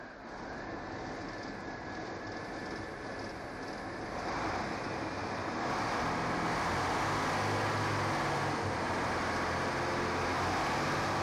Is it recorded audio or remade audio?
recorded